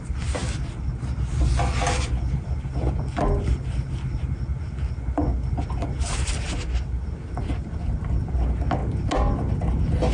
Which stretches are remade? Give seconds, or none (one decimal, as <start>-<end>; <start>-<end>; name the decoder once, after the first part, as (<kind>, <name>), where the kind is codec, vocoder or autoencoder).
none